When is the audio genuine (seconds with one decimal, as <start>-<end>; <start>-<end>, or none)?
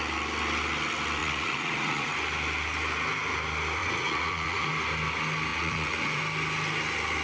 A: 0.0-1.2; 2.1-3.8; 4.7-5.5; 6.2-7.2